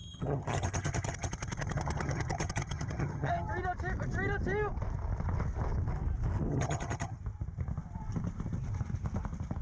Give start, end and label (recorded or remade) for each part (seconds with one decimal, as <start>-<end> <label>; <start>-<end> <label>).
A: 0.0-3.5 remade; 3.5-6.5 recorded; 6.5-7.2 remade; 7.2-9.6 recorded

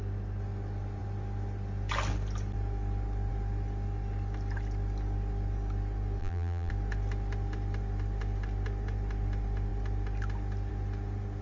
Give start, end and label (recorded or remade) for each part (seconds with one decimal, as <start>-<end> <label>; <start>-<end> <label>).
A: 0.0-6.2 recorded; 6.2-6.7 remade; 6.7-11.4 recorded